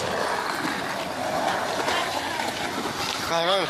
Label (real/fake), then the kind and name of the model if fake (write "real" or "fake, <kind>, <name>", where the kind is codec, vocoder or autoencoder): real